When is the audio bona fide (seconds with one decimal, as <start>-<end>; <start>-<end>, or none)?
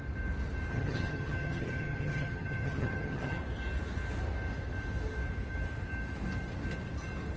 0.0-0.7; 3.4-7.4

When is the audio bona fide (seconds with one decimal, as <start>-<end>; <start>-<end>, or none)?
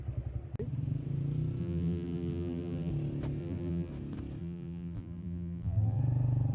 0.0-1.6; 2.9-3.4; 3.9-4.4; 6.0-6.5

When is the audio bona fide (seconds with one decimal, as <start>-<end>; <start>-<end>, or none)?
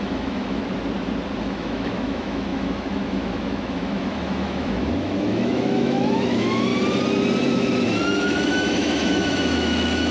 0.6-1.4; 6.7-7.5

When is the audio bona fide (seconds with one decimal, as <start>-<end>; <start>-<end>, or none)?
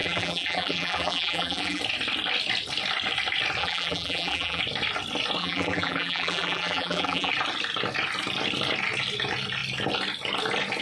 1.8-3.6; 4.6-5.4; 7.3-10.8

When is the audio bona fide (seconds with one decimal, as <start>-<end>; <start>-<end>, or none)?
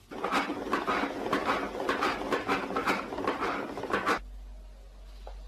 0.0-5.5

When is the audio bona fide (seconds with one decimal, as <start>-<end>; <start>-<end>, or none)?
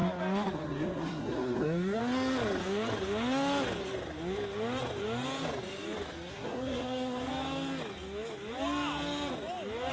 0.0-0.5; 2.0-6.3; 7.3-9.9